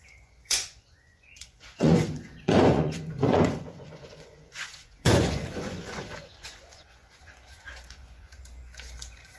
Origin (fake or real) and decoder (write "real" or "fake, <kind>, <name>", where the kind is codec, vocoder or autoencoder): fake, vocoder, Vocos